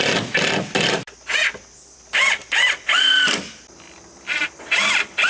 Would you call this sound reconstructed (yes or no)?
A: no